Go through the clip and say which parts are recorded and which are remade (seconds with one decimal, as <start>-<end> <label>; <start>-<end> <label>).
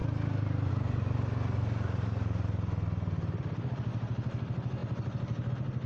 0.0-5.9 recorded